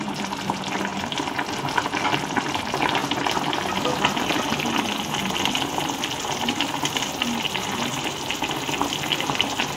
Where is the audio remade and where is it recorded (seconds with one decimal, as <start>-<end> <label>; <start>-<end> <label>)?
0.0-9.8 recorded